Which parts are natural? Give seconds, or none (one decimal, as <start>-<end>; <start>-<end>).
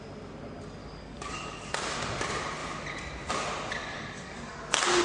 0.0-0.8; 1.7-3.8; 4.6-5.0